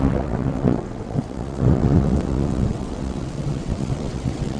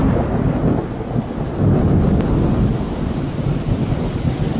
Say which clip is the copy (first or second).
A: first